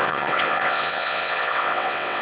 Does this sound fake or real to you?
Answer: fake